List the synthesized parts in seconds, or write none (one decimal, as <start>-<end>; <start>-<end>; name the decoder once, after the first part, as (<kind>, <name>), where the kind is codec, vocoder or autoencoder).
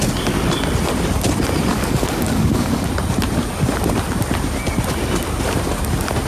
1.7-2.9 (codec, DAC)